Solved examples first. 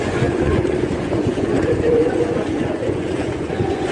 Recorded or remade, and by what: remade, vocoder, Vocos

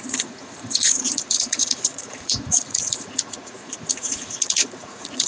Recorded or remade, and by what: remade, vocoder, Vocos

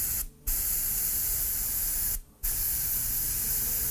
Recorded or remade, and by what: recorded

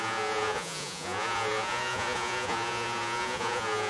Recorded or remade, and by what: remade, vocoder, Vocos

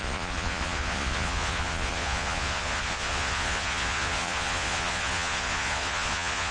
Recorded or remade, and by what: remade, vocoder, Vocos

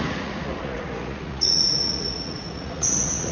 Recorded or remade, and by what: remade, vocoder, Vocos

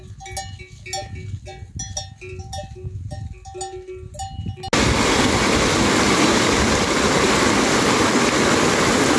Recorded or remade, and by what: recorded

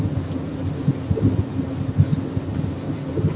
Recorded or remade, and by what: recorded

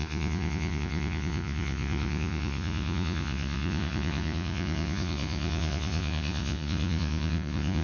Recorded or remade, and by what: remade, vocoder, Vocos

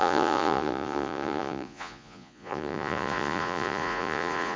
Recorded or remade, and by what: remade, vocoder, Vocos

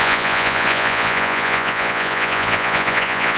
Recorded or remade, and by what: remade, vocoder, Vocos